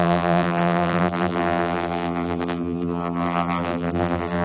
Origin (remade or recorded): remade